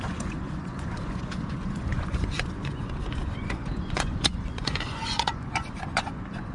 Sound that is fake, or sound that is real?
fake